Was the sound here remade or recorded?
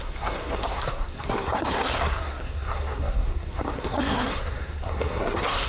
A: remade